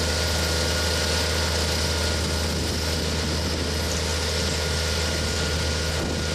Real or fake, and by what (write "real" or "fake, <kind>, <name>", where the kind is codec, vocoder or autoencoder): real